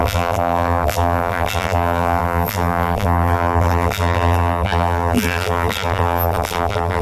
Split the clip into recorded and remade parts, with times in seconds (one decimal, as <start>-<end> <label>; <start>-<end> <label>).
0.0-7.0 remade